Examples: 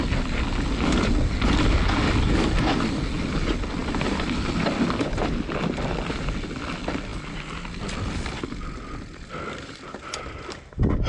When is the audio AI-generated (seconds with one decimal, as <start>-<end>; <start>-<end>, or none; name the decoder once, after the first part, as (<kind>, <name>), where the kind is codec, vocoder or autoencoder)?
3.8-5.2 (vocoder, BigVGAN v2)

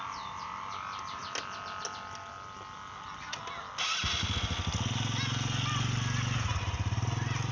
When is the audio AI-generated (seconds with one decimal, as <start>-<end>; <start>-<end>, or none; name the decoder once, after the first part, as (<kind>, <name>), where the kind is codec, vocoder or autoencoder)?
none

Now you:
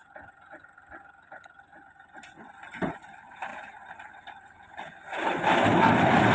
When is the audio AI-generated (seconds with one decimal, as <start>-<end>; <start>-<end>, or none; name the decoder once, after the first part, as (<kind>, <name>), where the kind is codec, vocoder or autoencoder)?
none